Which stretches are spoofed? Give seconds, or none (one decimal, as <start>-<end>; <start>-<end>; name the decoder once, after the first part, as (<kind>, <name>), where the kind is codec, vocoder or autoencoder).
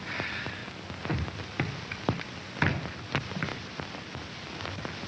none